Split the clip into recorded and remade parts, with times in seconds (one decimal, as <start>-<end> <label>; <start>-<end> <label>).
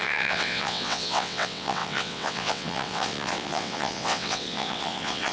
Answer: 0.0-5.3 remade